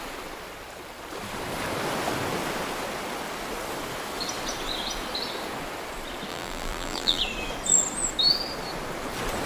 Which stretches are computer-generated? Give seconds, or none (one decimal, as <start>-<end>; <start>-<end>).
6.3-7.2